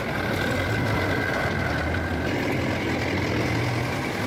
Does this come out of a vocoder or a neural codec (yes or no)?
no